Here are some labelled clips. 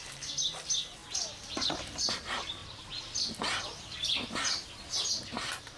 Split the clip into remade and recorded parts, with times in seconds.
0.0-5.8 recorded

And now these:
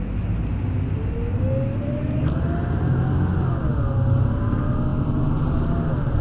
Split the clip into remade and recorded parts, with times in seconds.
0.0-6.2 recorded

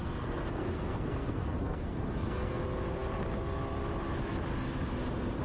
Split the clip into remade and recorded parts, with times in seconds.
0.0-2.6 remade; 2.6-5.4 recorded

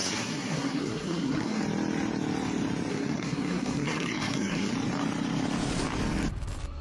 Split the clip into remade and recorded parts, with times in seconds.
0.0-1.6 remade; 1.6-2.9 recorded; 2.9-4.7 remade; 4.7-6.8 recorded

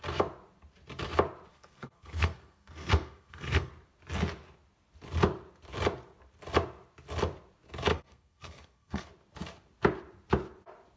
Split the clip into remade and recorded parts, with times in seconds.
0.0-1.5 recorded; 1.5-3.7 remade; 3.7-7.9 recorded; 7.9-9.1 remade; 9.1-11.0 recorded

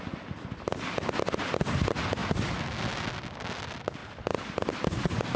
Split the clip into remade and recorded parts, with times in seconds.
0.0-5.4 recorded

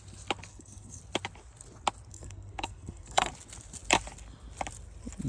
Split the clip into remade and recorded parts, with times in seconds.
0.0-0.5 recorded; 0.5-1.0 remade; 1.0-2.1 recorded; 2.1-3.3 remade; 3.3-5.3 recorded